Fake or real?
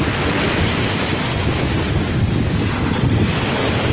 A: real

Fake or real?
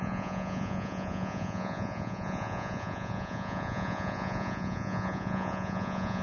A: fake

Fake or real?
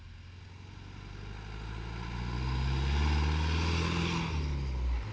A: real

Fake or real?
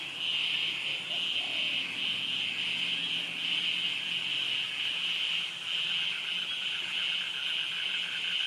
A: real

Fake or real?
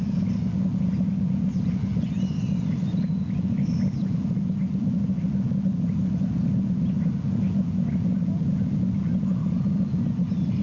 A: real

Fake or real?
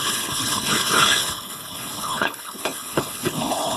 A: fake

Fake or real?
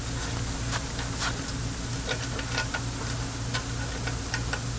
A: real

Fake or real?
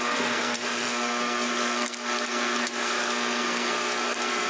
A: fake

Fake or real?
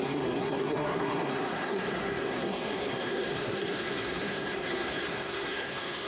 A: fake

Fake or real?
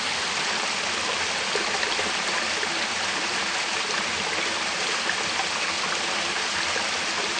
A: real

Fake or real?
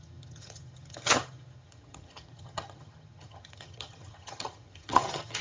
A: fake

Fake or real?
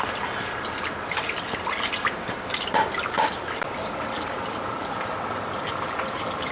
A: real